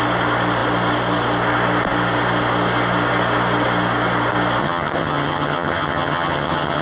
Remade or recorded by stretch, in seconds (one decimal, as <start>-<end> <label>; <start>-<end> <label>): 0.0-4.6 recorded; 4.6-6.8 remade